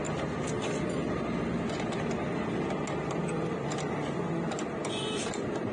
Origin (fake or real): real